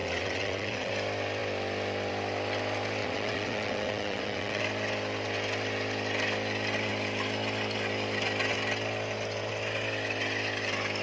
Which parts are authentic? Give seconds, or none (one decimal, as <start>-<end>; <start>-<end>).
0.9-3.0; 4.6-11.0